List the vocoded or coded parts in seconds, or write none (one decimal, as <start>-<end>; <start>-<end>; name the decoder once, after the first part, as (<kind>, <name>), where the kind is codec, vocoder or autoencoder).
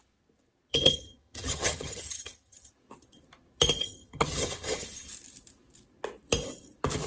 0.7-2.7 (vocoder, HiFi-GAN); 3.8-5.1